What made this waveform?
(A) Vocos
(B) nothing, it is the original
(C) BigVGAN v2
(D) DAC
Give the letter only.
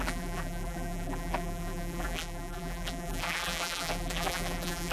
C